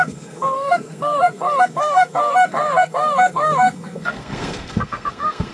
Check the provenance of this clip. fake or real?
fake